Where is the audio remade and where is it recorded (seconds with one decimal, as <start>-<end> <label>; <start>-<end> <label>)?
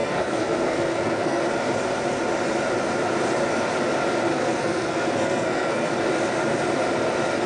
0.0-1.4 remade; 1.4-4.3 recorded; 4.3-5.9 remade; 5.9-7.5 recorded